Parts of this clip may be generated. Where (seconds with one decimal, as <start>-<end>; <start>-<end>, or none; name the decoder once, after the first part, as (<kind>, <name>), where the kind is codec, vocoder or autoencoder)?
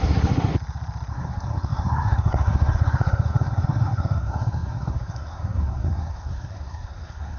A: 0.0-0.5 (codec, SNAC); 1.1-7.4